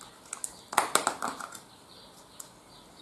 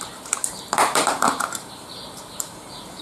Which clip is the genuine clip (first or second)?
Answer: first